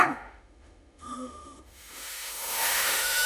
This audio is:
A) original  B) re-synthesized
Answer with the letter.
B